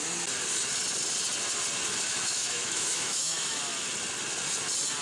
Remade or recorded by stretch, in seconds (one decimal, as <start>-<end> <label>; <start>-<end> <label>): 0.0-2.1 recorded; 2.1-3.6 remade; 3.6-5.0 recorded